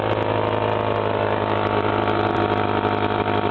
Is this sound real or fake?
real